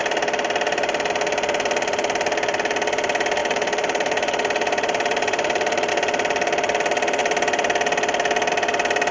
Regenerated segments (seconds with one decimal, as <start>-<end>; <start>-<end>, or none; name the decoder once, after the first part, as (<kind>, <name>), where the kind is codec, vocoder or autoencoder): 3.4-5.9 (vocoder, BigVGAN v2)